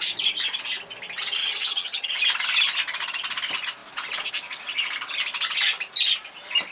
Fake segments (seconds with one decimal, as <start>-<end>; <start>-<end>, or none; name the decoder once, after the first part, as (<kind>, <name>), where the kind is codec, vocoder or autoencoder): 1.4-2.2 (vocoder, HiFi-GAN)